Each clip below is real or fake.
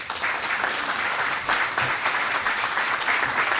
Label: fake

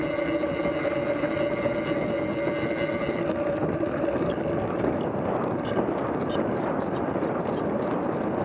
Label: real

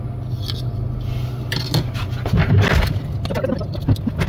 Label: real